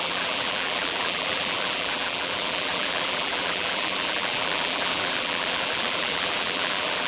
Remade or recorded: remade